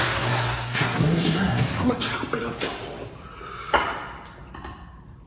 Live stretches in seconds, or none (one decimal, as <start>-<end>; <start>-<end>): 2.1-5.3